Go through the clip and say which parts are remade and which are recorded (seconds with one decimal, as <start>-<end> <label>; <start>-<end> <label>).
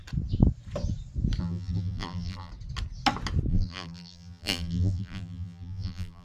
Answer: 0.0-1.4 recorded; 1.4-2.5 remade; 2.5-3.5 recorded; 3.5-6.2 remade